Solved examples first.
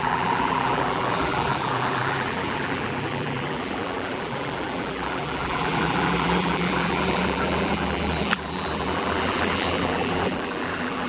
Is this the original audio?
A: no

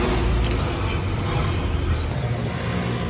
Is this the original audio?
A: yes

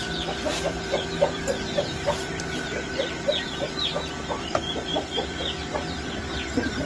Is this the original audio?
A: no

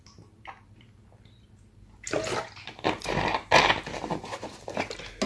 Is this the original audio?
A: yes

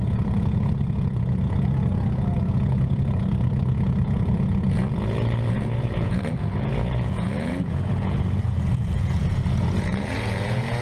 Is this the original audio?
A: no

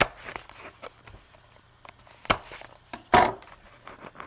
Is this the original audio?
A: yes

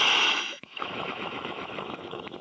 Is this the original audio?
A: no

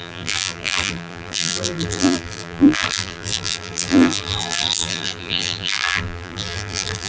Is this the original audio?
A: no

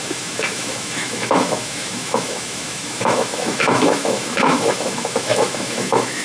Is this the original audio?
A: no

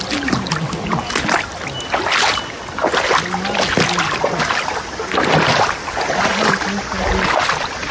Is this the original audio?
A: yes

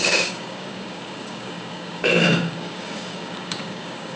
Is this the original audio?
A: no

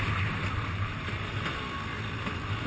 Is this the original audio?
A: yes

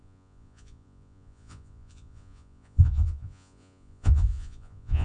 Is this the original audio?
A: no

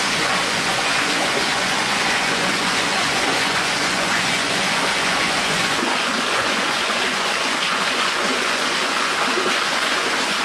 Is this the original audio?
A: no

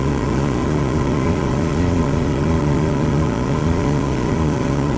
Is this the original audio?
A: no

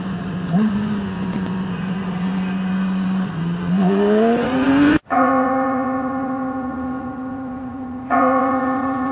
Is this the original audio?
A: no